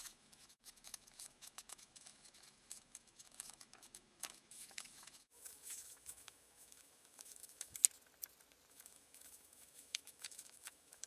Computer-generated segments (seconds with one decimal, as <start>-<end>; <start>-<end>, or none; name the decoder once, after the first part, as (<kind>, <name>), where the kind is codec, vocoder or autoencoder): 0.0-7.8 (autoencoder, DAC-VAE); 8.7-11.1

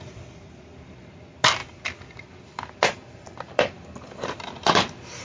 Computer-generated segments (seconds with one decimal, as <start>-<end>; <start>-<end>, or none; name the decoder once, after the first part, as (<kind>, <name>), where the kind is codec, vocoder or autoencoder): none

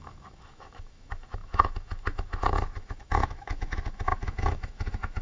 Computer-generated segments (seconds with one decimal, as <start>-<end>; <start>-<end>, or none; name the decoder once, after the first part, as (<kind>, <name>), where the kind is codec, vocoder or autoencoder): 0.0-5.2 (autoencoder, DAC-VAE)

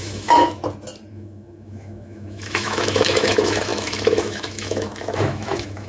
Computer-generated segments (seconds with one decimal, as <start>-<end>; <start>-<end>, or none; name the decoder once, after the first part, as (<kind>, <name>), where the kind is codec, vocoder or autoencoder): 0.0-0.6 (autoencoder, DAC-VAE); 1.1-5.9

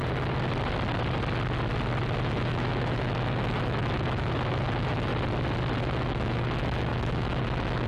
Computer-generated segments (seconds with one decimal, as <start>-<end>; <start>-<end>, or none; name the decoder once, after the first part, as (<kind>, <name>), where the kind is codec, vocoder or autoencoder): 2.2-5.1 (autoencoder, DAC-VAE); 5.7-7.9

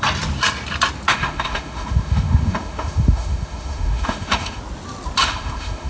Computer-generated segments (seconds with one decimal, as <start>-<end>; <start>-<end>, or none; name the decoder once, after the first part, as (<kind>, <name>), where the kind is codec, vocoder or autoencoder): 1.1-4.6 (autoencoder, DAC-VAE); 5.2-5.9

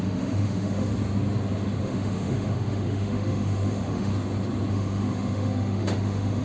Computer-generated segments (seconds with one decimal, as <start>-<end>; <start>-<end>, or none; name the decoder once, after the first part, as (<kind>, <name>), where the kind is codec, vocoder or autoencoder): 0.0-0.9 (autoencoder, DAC-VAE); 1.8-4.1; 4.7-6.4

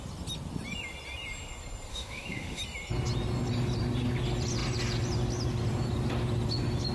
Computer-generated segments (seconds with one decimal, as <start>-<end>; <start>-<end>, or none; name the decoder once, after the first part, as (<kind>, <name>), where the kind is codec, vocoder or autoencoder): 1.9-2.6 (autoencoder, DAC-VAE)